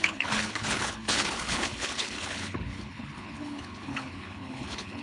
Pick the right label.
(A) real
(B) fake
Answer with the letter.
B